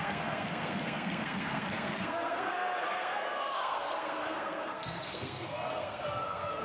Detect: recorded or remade remade